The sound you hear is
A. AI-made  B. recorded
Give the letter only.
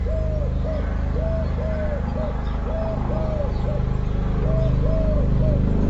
B